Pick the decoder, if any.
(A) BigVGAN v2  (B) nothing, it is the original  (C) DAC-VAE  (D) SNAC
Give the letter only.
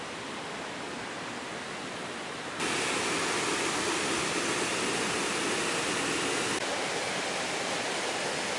B